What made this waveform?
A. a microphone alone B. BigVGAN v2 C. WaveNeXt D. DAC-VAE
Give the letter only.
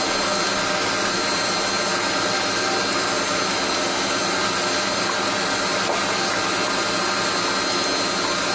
A